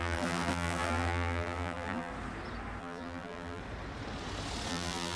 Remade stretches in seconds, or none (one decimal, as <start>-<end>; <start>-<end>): 0.0-2.1; 2.8-3.6; 4.7-5.2